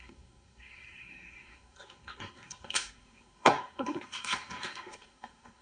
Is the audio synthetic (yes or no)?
yes